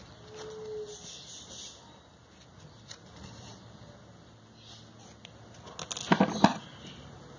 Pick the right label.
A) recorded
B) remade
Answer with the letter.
A